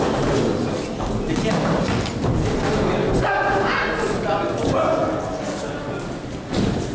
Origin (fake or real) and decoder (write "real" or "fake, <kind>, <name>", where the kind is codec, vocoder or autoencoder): real